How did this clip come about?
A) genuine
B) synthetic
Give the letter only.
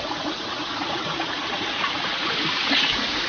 B